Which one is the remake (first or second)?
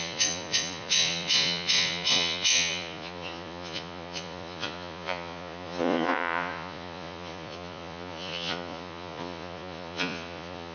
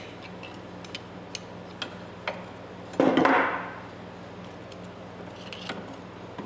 first